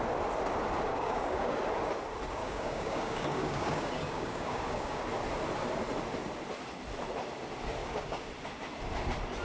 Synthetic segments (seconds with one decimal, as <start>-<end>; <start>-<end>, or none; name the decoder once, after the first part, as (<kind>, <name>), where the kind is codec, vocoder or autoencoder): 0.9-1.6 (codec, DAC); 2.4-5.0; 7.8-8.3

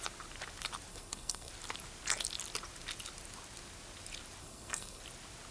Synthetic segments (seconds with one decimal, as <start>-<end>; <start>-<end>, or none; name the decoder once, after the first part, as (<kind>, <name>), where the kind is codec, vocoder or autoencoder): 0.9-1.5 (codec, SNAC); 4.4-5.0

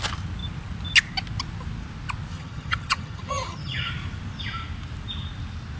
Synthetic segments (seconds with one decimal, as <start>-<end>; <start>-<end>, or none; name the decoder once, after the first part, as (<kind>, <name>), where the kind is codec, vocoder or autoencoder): 2.3-3.9 (vocoder, HiFi-GAN)